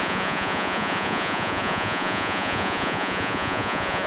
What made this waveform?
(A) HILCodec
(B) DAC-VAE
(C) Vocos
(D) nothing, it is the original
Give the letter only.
C